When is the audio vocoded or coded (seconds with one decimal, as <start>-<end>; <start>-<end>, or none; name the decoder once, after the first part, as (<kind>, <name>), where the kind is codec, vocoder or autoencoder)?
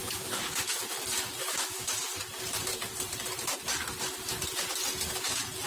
0.0-0.8 (autoencoder, DAC-VAE); 1.4-1.9